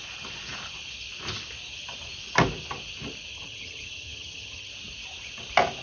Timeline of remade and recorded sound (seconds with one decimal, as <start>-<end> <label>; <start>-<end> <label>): 0.0-3.3 recorded; 3.3-4.7 remade; 4.7-5.8 recorded